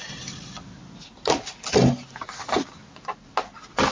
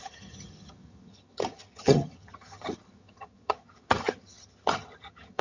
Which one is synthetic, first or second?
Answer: second